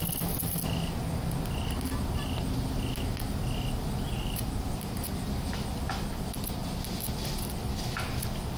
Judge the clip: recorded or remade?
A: recorded